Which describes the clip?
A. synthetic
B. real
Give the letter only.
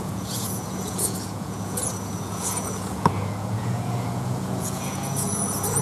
A